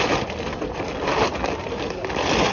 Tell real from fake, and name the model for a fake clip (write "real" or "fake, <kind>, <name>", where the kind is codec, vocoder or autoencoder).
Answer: real